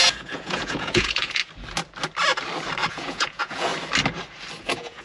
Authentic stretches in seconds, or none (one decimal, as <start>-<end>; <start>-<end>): 1.4-2.9; 3.7-4.6